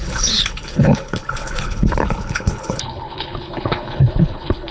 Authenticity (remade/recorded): remade